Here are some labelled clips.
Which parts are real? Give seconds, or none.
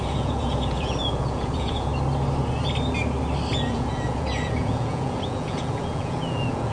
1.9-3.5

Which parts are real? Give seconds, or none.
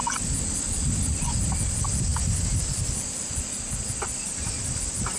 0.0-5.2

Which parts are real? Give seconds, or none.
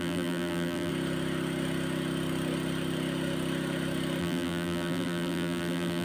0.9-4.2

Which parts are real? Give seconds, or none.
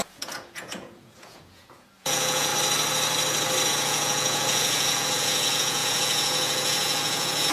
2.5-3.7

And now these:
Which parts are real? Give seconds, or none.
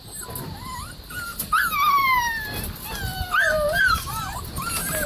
0.0-1.3; 1.9-3.1; 4.2-5.1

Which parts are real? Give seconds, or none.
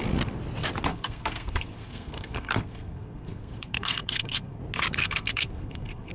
0.0-0.9; 4.6-5.0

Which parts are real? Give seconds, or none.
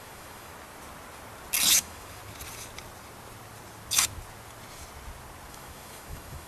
0.5-1.7; 2.2-5.5